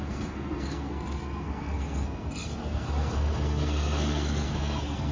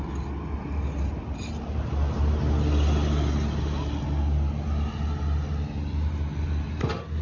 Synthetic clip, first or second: first